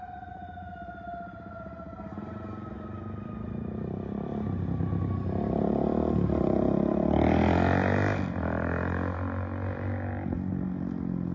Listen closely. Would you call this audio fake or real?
real